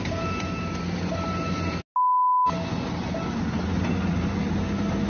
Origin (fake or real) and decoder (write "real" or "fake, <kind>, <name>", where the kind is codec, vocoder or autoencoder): real